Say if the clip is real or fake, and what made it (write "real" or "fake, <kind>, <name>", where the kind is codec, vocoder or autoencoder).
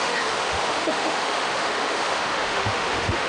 fake, autoencoder, DAC-VAE